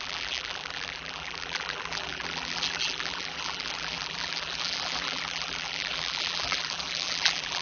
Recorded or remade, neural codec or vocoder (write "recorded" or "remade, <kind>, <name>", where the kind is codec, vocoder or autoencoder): remade, vocoder, BigVGAN v2